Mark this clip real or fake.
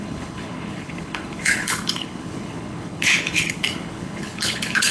fake